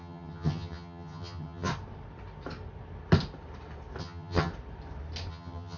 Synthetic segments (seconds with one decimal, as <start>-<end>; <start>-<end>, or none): 0.0-1.7; 4.0-4.5; 5.3-5.8